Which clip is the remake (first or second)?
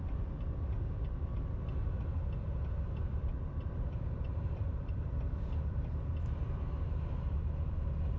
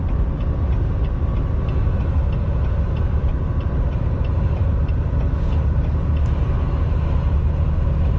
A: first